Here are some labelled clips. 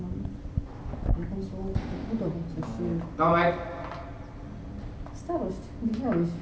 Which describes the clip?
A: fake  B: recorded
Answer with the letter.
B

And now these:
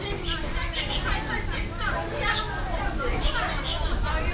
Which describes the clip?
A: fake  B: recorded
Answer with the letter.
B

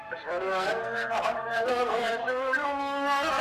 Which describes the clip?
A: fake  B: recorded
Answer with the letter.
A